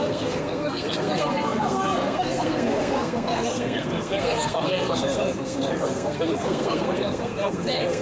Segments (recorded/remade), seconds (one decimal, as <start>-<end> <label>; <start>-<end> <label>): 0.0-8.0 remade